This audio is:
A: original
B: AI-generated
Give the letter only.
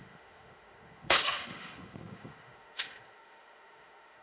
B